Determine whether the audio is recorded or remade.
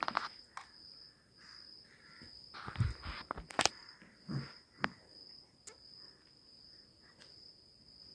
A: recorded